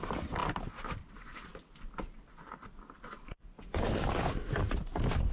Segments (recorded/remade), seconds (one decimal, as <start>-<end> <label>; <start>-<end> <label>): 0.0-5.3 remade